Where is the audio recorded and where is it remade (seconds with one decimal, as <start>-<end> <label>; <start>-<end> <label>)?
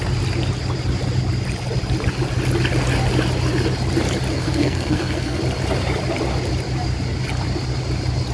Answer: 0.0-4.3 recorded; 4.3-5.4 remade; 5.4-8.3 recorded